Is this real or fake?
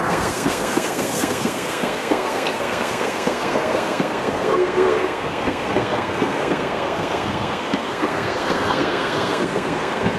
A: fake